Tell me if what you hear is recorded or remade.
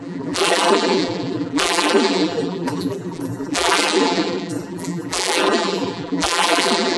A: remade